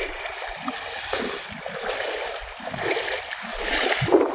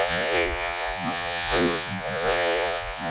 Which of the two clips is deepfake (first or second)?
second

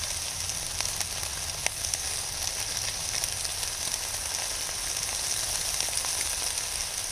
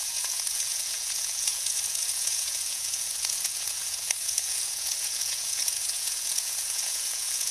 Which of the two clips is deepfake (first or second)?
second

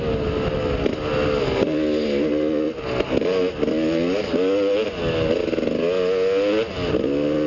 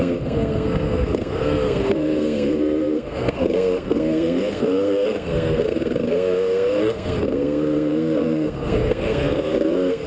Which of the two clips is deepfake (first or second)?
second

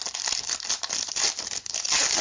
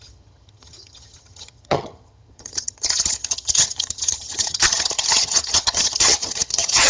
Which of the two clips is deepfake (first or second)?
second